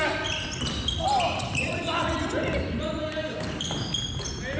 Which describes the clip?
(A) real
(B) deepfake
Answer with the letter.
A